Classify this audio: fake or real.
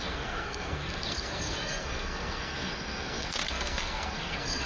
fake